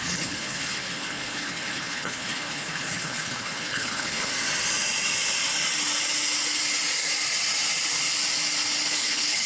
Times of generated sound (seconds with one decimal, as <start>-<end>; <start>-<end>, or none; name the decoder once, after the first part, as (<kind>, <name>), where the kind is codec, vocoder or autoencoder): 0.0-4.3 (codec, HILCodec); 8.9-9.5